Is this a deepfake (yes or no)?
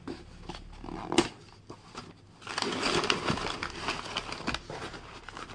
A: no